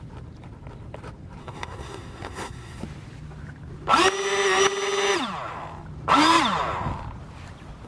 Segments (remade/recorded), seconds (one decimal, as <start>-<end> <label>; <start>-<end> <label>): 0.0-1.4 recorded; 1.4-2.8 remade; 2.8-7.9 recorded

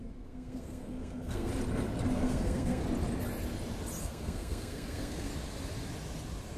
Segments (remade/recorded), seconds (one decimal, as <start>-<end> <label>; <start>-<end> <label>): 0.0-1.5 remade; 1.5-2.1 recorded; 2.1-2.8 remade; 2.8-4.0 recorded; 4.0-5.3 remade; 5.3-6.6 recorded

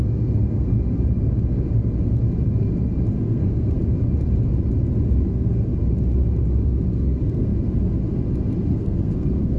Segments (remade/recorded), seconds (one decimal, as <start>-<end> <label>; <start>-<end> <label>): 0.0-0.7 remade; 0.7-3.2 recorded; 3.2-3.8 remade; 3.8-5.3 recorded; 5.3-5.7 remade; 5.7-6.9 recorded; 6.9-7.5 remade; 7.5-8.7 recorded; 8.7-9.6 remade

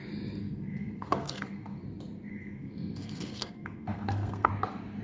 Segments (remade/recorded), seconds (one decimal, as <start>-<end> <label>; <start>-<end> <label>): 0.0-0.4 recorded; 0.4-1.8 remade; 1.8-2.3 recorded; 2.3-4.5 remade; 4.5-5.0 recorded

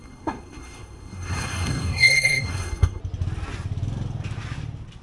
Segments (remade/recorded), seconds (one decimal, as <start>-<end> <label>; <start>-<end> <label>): 0.0-3.0 remade; 3.0-5.0 recorded

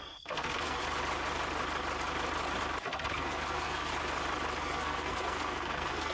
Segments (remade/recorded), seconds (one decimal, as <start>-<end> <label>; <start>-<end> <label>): 0.0-0.8 remade; 0.8-2.8 recorded; 2.8-3.9 remade; 3.9-4.6 recorded; 4.6-6.1 remade